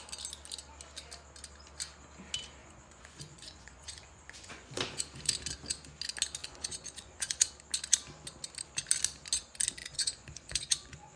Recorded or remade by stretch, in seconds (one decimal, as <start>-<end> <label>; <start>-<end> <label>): 0.0-2.6 recorded; 2.6-5.3 remade; 5.3-6.4 recorded; 6.4-7.5 remade; 7.5-9.8 recorded; 9.8-11.2 remade